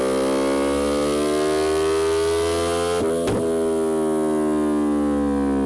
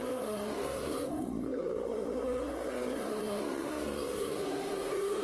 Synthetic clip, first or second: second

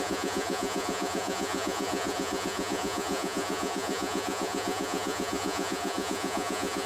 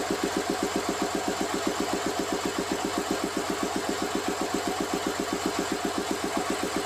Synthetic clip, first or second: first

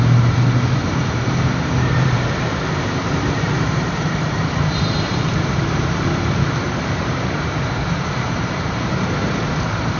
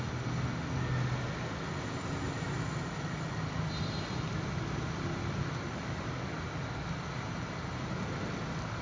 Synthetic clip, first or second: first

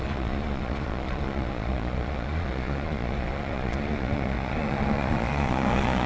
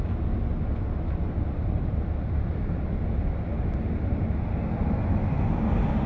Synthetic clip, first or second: first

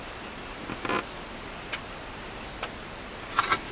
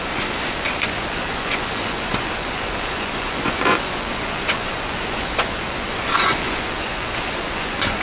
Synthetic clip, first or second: second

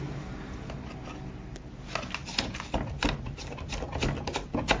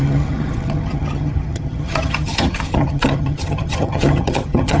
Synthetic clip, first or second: second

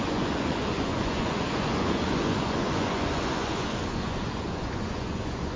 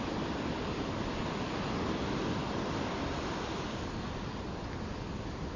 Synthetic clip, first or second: first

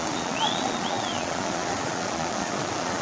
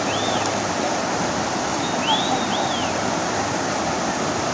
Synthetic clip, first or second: first